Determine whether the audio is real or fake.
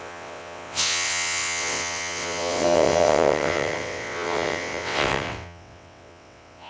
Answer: fake